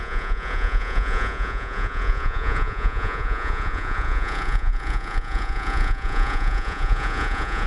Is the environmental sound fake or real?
fake